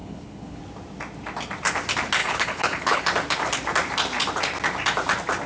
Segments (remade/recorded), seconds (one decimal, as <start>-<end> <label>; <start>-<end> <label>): 0.0-0.6 remade; 0.6-2.2 recorded; 2.2-3.0 remade; 3.0-5.5 recorded